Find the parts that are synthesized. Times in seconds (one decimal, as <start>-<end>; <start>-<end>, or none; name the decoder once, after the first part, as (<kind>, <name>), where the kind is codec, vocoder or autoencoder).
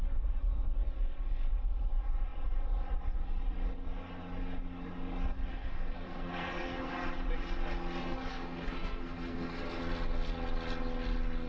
5.5-6.9 (codec, SNAC); 8.0-9.8